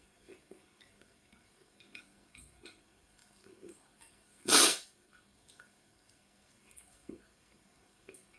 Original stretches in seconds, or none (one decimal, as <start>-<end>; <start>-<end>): none